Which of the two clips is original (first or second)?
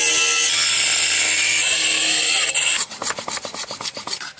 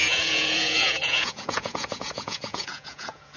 first